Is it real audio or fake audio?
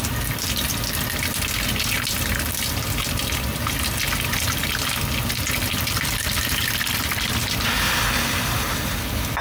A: real